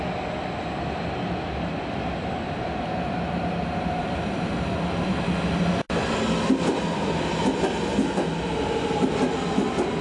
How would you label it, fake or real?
real